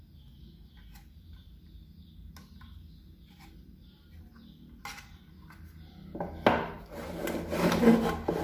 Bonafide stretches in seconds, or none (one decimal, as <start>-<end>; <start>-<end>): 0.0-8.4